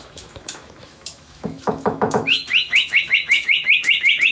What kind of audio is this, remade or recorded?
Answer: remade